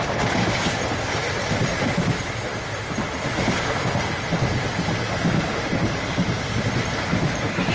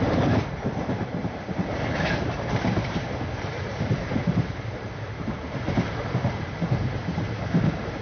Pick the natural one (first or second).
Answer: first